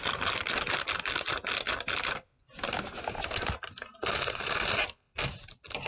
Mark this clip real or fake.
real